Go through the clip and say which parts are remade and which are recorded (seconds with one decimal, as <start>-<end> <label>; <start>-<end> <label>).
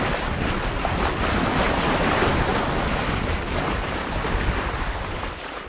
0.0-2.5 remade; 2.5-4.4 recorded; 4.4-5.7 remade